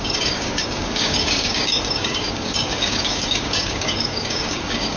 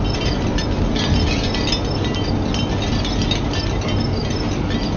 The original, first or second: second